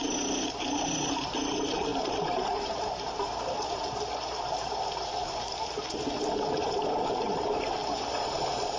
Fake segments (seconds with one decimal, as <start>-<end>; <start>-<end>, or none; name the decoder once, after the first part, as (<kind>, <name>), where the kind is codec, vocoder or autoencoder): 0.0-8.8 (vocoder, BigVGAN v2)